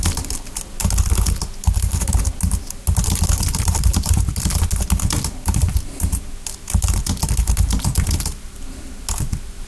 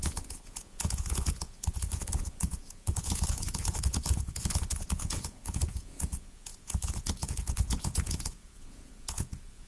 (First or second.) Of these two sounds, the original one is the first